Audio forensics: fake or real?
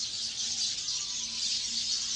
real